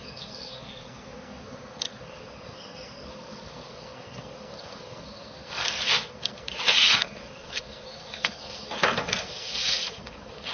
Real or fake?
fake